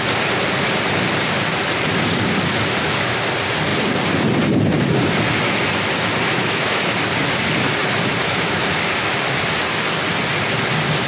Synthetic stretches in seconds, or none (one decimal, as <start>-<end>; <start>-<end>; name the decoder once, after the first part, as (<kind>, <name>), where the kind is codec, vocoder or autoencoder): 6.3-6.9 (autoencoder, DAC-VAE); 8.2-8.7